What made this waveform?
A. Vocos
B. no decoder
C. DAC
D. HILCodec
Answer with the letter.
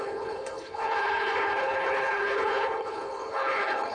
D